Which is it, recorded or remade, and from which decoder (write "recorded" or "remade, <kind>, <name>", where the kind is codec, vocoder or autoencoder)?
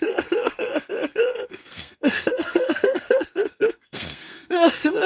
remade, codec, SNAC